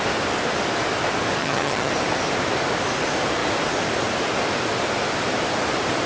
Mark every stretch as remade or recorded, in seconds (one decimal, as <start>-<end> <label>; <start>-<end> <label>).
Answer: 0.0-1.4 recorded; 1.4-1.9 remade; 1.9-6.1 recorded